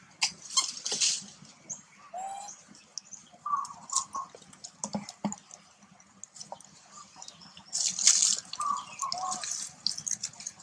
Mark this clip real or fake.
real